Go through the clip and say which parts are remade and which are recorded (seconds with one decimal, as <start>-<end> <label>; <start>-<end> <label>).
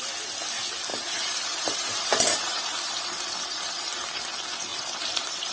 0.0-0.9 recorded; 0.9-4.2 remade; 4.2-4.7 recorded; 4.7-5.5 remade